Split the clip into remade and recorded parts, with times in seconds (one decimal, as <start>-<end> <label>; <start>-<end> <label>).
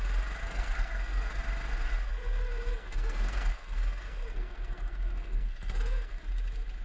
0.0-0.4 recorded; 0.4-1.4 remade; 1.4-2.1 recorded; 2.1-6.2 remade; 6.2-6.8 recorded